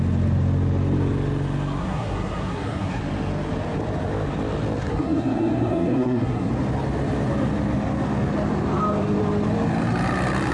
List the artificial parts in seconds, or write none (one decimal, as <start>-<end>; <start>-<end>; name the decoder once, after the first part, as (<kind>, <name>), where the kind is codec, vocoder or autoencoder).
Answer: 1.8-3.0 (codec, SNAC); 4.8-6.5